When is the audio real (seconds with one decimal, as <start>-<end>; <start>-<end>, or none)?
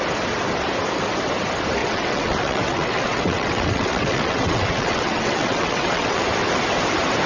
0.0-1.8; 6.2-7.3